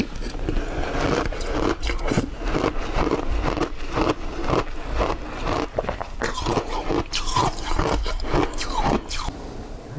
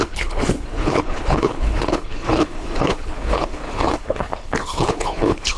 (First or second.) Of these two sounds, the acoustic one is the first